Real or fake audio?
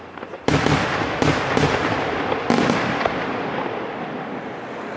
real